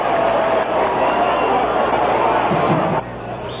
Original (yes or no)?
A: no